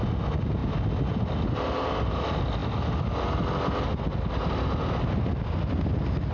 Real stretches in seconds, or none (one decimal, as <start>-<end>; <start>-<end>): 0.0-6.3